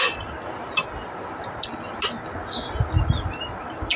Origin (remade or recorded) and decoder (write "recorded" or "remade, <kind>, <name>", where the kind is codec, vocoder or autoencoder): recorded